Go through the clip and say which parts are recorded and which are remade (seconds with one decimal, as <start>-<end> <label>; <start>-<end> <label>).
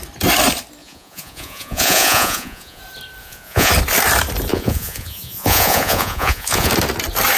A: 0.0-0.8 recorded; 0.8-2.8 remade; 2.8-3.2 recorded; 3.2-3.7 remade; 3.7-4.5 recorded; 4.5-6.7 remade; 6.7-7.4 recorded